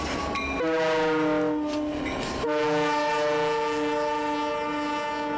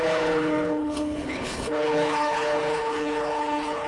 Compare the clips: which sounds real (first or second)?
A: first